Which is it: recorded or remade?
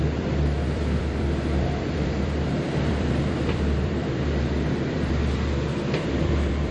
remade